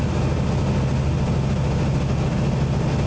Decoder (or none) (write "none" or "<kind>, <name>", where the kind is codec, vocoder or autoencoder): none